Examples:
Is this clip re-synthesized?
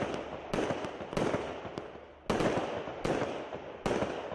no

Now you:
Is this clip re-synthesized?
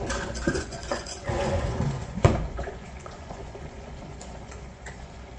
yes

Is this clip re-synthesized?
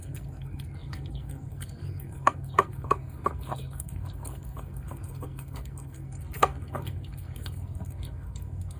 yes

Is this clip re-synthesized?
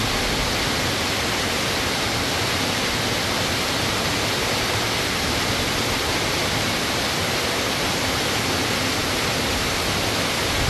no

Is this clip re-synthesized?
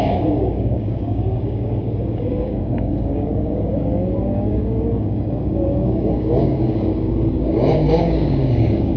yes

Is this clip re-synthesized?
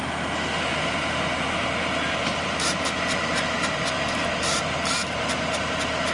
no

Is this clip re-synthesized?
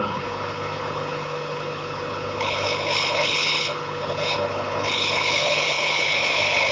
yes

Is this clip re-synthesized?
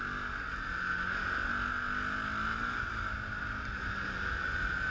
no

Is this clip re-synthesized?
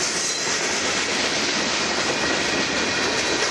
yes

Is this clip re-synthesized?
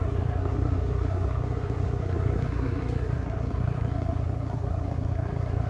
yes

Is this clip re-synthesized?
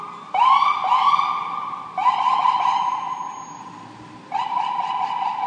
no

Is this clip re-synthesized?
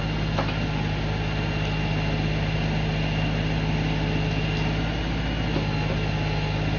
no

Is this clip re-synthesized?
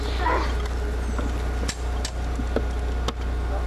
no